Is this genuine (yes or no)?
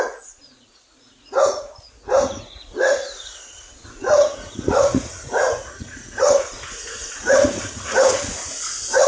no